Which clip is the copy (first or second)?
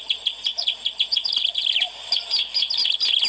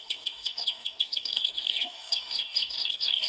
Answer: second